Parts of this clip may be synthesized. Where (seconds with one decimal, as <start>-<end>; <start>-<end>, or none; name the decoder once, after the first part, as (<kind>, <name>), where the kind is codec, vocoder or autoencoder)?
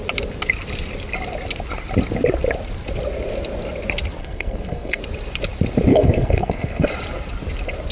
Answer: 4.2-5.0 (codec, SNAC); 5.9-6.9